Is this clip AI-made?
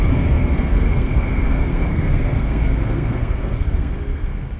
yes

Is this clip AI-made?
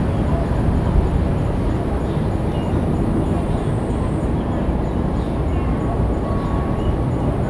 no